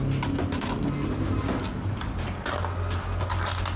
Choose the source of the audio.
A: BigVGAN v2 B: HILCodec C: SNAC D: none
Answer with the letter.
D